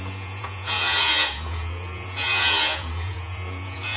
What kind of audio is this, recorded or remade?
remade